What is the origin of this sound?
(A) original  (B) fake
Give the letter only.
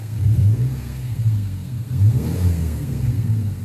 B